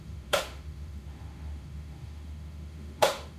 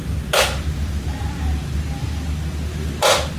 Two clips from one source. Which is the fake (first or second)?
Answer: first